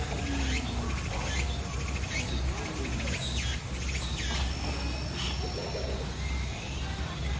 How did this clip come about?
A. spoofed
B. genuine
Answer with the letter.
B